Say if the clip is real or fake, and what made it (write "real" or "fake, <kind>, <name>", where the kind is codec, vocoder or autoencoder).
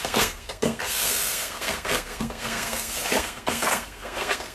fake, codec, SNAC